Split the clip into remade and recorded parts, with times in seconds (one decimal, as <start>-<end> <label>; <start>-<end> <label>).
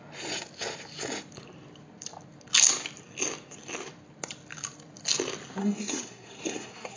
0.0-5.6 recorded; 5.6-7.0 remade